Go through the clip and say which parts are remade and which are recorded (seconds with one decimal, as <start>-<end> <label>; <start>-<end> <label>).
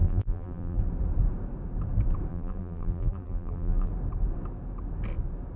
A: 0.0-0.8 remade; 0.8-2.3 recorded; 2.3-3.9 remade; 3.9-5.6 recorded